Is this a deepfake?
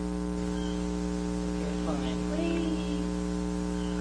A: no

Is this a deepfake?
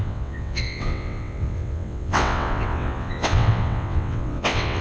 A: yes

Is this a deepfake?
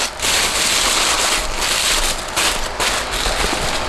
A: no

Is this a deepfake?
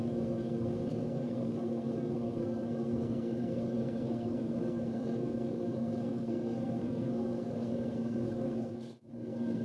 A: yes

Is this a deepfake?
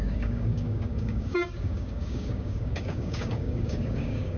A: yes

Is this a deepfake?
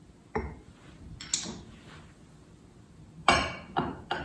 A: no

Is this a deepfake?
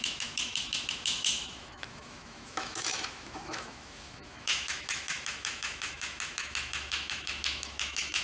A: yes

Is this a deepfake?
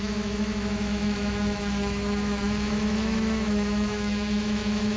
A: yes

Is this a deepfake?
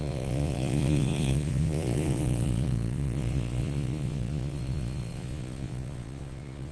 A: yes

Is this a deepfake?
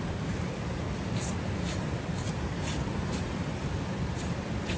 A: yes